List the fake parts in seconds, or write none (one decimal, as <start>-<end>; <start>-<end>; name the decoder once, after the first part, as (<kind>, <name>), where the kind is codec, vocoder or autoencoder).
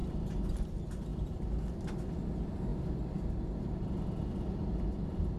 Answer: 1.1-1.9 (vocoder, BigVGAN v2)